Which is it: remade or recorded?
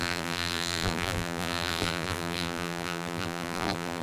remade